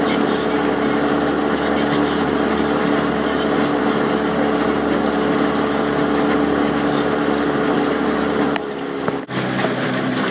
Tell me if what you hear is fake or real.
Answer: real